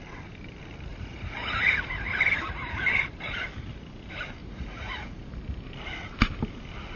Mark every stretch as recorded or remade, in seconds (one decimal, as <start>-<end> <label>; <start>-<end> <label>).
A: 0.0-0.9 recorded; 0.9-2.2 remade; 2.2-4.4 recorded; 4.4-5.3 remade; 5.3-7.0 recorded